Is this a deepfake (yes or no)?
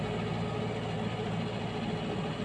no